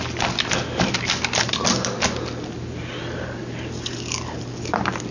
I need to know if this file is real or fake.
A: real